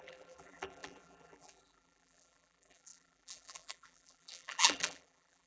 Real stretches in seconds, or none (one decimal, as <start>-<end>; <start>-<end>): none